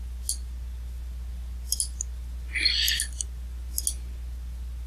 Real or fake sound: real